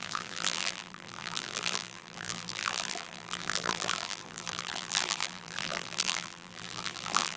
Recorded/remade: remade